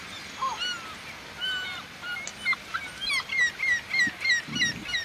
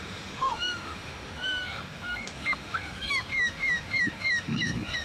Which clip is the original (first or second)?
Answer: first